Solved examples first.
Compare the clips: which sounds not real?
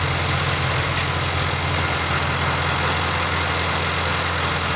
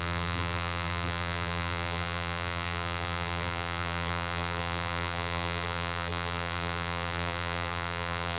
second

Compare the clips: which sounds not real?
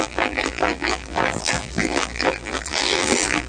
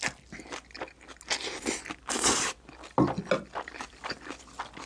first